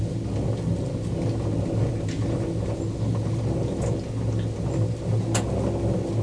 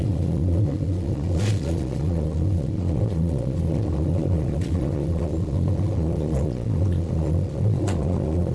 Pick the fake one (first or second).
second